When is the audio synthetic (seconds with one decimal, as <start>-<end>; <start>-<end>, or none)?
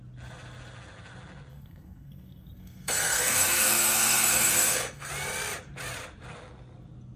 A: 1.5-5.1